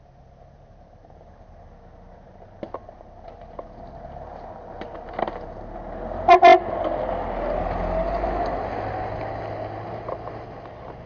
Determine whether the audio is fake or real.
real